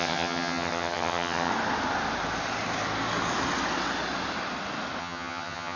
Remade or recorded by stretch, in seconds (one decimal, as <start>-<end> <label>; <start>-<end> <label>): 0.0-1.5 remade; 1.5-5.0 recorded; 5.0-5.8 remade